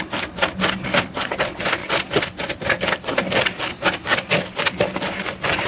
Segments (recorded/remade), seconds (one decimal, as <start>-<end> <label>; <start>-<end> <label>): 0.0-5.7 recorded

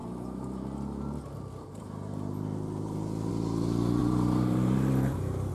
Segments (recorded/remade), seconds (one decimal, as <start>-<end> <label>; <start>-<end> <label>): 0.0-4.0 recorded; 4.0-5.5 remade

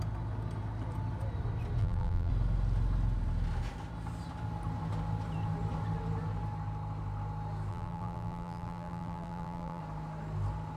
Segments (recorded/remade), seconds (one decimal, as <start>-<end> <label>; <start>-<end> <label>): 0.0-1.8 recorded; 1.8-2.3 remade; 2.3-7.7 recorded; 7.7-9.8 remade; 9.8-10.8 recorded

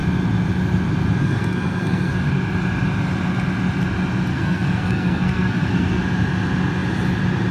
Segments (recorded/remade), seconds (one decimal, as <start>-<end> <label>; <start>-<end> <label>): 0.0-1.2 recorded; 1.2-2.1 remade; 2.1-4.3 recorded; 4.3-6.0 remade; 6.0-7.5 recorded

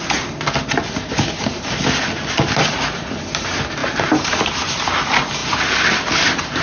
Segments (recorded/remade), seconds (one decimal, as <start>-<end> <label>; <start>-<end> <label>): 0.0-3.8 recorded; 3.8-4.4 remade; 4.4-6.6 recorded

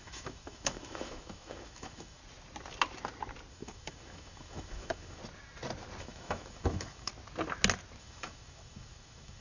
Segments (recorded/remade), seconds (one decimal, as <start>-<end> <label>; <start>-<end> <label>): 0.0-2.2 remade; 2.2-3.5 recorded; 3.5-5.2 remade; 5.2-6.0 recorded; 6.0-7.1 remade; 7.1-8.0 recorded; 8.0-9.4 remade

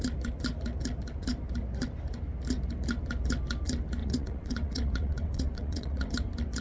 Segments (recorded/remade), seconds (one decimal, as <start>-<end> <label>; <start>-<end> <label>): 0.0-4.0 recorded; 4.0-6.1 remade; 6.1-6.6 recorded

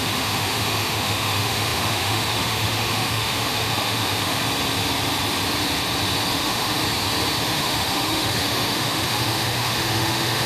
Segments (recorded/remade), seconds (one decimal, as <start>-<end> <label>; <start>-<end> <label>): 0.0-4.4 remade; 4.4-6.3 recorded; 6.3-6.8 remade; 6.8-7.4 recorded; 7.4-10.5 remade